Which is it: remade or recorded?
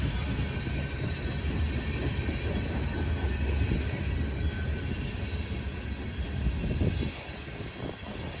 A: recorded